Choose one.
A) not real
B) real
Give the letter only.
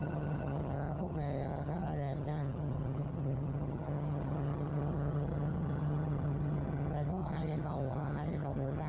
A